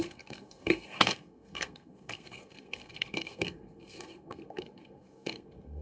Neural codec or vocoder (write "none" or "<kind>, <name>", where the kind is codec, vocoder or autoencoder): codec, SNAC